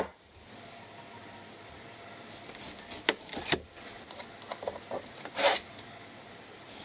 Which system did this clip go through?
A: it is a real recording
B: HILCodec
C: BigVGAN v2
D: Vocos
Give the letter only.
A